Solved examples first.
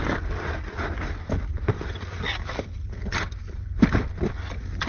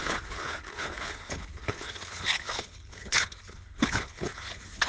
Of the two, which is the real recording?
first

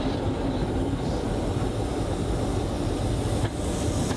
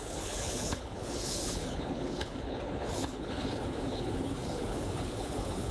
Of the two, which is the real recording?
first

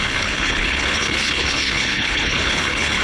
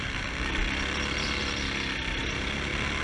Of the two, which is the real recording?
second